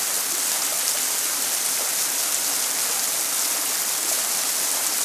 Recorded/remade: recorded